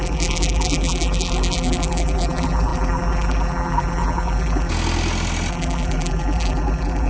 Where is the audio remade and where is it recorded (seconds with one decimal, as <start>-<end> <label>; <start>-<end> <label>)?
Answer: 0.0-4.7 remade; 4.7-5.5 recorded; 5.5-7.1 remade